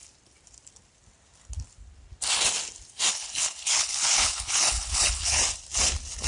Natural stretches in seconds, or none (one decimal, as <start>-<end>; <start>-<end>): 0.0-3.1; 5.4-6.3